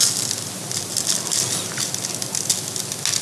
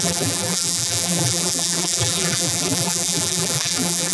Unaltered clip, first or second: first